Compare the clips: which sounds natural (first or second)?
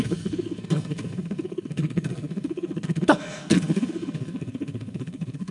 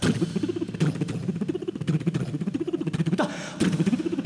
second